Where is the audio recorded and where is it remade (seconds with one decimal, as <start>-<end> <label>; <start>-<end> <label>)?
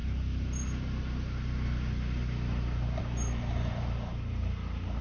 0.0-5.0 recorded